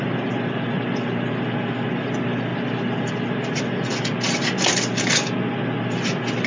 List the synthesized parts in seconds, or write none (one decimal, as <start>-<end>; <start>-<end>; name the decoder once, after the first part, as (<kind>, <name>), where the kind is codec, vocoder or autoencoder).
none